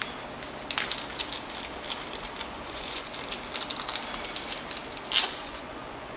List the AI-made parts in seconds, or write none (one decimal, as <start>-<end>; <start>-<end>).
2.4-3.1; 5.2-6.2